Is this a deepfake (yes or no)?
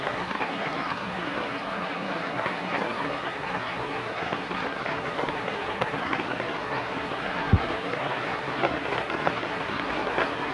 yes